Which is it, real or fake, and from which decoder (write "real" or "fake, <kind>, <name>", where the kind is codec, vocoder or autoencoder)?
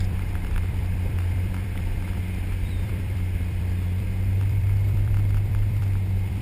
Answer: fake, vocoder, BigVGAN v2